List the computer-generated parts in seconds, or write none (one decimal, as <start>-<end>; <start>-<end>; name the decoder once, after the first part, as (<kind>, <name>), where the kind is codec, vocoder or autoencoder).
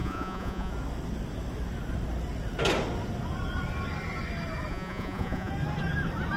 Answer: 0.0-0.7 (vocoder, Vocos); 4.7-5.5